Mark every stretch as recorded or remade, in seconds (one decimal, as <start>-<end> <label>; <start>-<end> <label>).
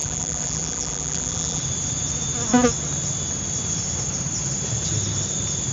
0.0-1.6 remade; 1.6-5.7 recorded